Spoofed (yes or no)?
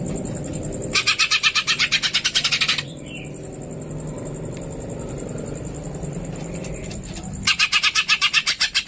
yes